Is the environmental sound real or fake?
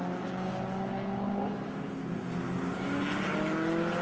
real